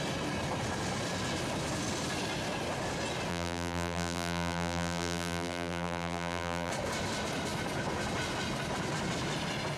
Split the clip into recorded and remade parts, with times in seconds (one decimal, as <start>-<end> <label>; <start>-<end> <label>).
0.0-3.3 recorded; 3.3-6.7 remade; 6.7-9.8 recorded

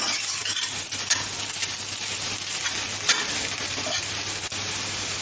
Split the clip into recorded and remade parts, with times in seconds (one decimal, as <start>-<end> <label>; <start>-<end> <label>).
0.0-5.2 recorded

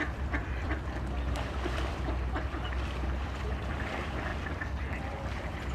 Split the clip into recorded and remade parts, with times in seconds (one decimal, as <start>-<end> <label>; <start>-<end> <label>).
0.0-5.7 remade

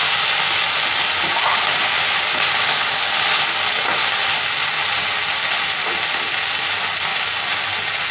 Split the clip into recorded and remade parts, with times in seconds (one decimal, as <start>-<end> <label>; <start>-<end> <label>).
0.0-1.8 recorded; 1.8-2.9 remade; 2.9-7.1 recorded; 7.1-8.1 remade

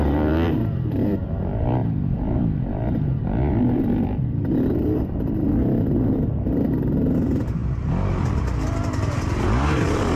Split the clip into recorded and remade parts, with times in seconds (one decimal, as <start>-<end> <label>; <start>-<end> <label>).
0.0-10.2 remade

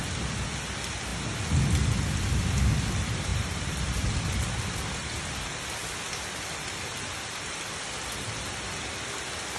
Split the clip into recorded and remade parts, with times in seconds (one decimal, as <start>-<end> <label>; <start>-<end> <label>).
0.0-3.3 recorded; 3.3-4.5 remade; 4.5-5.8 recorded; 5.8-7.0 remade; 7.0-9.6 recorded

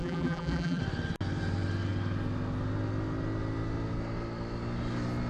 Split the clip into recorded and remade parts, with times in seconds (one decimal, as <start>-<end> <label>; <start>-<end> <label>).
0.0-0.8 remade; 0.8-5.3 recorded

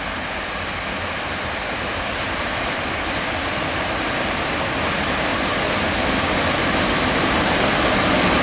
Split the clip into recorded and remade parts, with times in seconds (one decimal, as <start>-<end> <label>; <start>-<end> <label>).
0.0-1.9 recorded; 1.9-3.3 remade; 3.3-5.3 recorded; 5.3-7.5 remade; 7.5-8.4 recorded